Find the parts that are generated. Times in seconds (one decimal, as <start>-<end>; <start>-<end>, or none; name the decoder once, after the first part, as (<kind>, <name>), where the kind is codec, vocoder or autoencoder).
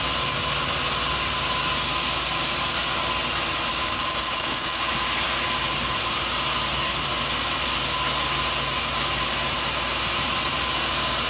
3.7-4.9 (codec, DAC)